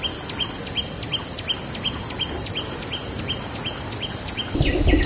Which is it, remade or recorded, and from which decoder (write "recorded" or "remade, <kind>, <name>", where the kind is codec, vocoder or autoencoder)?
recorded